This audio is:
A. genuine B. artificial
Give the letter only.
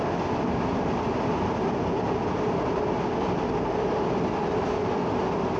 A